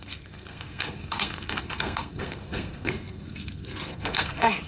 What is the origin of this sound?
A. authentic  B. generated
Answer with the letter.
B